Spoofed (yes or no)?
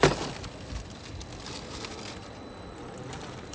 no